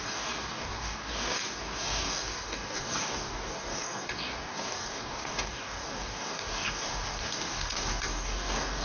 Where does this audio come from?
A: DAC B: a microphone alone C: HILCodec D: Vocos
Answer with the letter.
A